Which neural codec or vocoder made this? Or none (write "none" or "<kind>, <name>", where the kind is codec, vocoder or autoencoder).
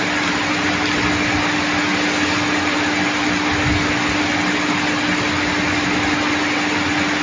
none